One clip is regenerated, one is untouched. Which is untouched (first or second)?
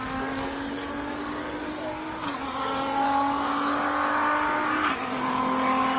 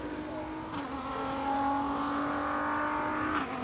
second